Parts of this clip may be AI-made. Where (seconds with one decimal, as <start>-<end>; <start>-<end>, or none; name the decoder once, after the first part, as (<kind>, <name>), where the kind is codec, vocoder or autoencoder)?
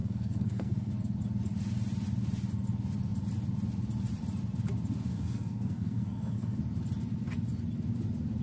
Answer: 0.0-0.9 (codec, SNAC); 5.1-6.6